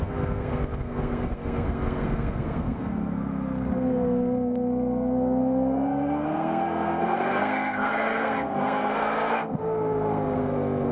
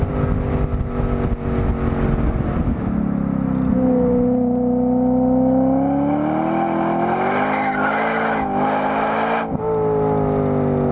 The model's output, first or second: first